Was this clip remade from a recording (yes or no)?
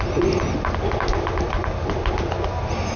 no